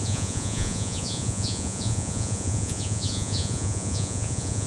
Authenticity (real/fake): fake